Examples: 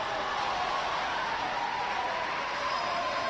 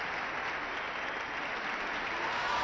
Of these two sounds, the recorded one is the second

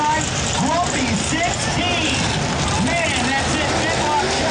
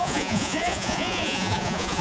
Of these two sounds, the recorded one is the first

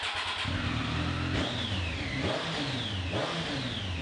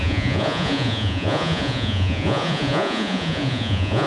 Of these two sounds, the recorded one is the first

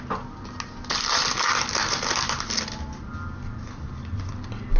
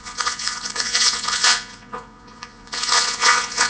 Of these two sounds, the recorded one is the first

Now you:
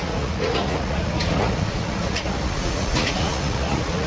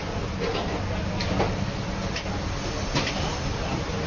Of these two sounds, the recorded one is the second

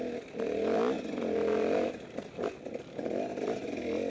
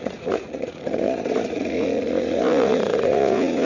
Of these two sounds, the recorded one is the first